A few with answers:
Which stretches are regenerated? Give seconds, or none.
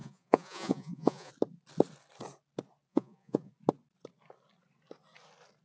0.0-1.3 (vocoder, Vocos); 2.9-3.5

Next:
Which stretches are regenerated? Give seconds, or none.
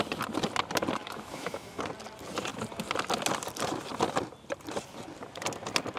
1.0-1.8 (autoencoder, DAC-VAE)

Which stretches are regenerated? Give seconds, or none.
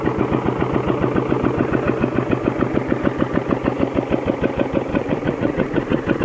4.9-6.2 (vocoder, Vocos)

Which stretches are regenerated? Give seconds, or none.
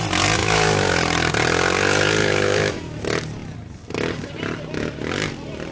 0.4-1.3 (autoencoder, DAC-VAE); 2.2-2.8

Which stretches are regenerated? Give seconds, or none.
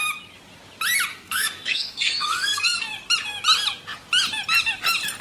1.1-2.9 (codec, SNAC)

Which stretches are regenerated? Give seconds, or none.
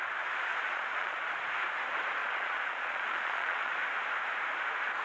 0.5-1.3 (vocoder, Vocos); 2.2-3.7